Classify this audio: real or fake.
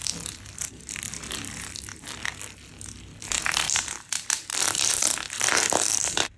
fake